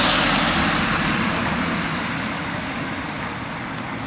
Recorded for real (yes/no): yes